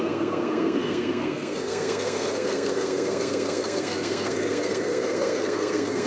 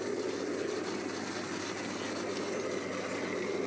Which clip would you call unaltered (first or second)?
second